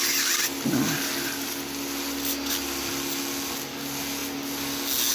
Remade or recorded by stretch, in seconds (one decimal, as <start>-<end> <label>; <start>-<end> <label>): 0.0-5.1 recorded